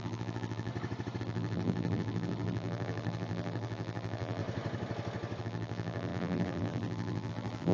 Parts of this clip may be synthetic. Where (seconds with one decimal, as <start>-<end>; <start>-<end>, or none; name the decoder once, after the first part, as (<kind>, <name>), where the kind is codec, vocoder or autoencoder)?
0.0-0.7 (vocoder, BigVGAN v2); 1.2-4.4; 5.4-7.7